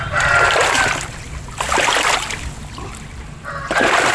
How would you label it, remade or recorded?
recorded